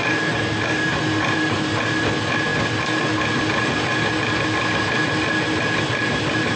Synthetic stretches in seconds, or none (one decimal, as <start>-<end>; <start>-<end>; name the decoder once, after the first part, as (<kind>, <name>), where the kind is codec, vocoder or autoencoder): 0.0-2.1 (vocoder, BigVGAN v2)